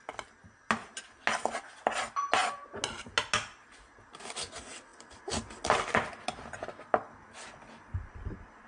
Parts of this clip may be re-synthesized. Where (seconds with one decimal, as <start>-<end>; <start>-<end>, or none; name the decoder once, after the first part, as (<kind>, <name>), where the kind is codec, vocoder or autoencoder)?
none